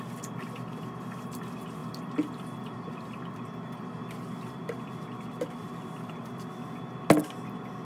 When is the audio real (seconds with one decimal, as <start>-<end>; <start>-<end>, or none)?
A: 0.0-1.8; 6.5-7.8